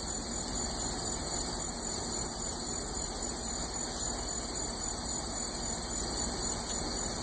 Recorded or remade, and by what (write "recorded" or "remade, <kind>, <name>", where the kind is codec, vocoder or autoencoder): recorded